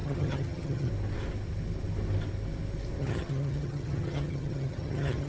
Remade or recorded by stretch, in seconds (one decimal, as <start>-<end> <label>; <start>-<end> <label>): 0.0-0.9 remade; 0.9-3.0 recorded; 3.0-5.3 remade